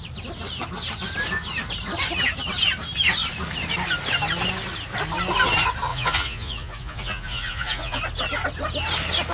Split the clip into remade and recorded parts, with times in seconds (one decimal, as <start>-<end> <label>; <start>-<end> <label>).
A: 0.0-5.9 recorded; 5.9-8.0 remade; 8.0-9.3 recorded